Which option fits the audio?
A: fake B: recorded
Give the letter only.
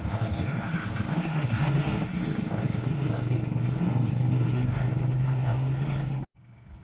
A